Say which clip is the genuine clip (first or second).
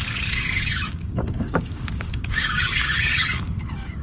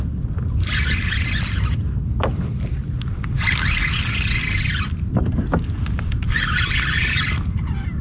second